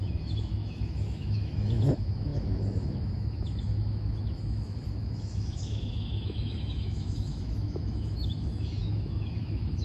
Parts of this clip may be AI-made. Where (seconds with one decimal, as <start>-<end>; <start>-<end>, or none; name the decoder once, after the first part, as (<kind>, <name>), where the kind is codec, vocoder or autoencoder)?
0.0-9.8 (autoencoder, DAC-VAE)